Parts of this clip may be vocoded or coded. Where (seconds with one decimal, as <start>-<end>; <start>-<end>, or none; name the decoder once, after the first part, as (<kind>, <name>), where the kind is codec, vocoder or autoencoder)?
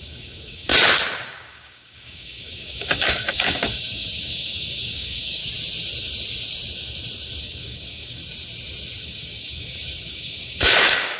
0.0-0.7 (codec, DAC); 1.3-5.4; 7.4-8.2; 9.0-11.2